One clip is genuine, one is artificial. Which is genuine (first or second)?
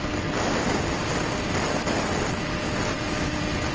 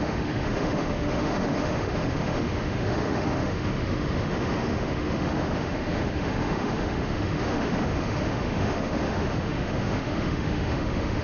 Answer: first